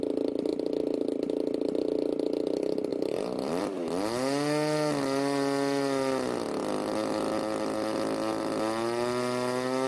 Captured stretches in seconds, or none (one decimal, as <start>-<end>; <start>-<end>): 0.0-2.9; 3.6-9.9